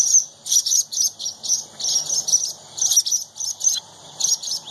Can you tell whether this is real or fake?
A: real